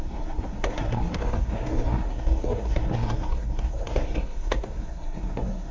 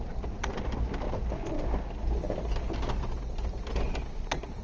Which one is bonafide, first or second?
second